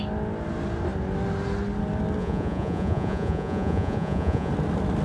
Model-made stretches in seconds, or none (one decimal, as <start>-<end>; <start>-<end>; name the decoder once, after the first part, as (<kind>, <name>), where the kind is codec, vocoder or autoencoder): 2.2-4.5 (vocoder, Vocos)